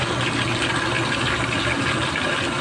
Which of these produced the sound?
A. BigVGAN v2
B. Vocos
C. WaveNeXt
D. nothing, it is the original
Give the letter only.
D